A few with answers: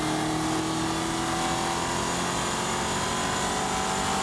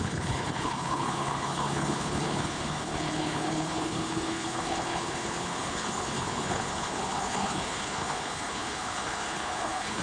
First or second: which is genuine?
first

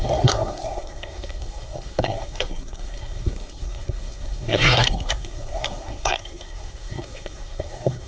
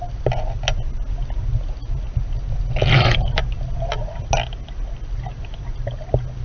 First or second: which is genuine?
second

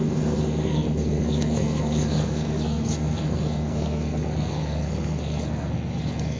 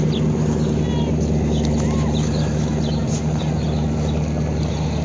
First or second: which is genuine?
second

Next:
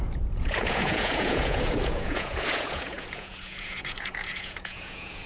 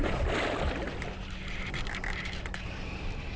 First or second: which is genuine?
second